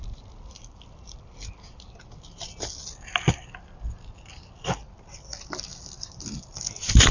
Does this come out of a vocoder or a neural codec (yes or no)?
no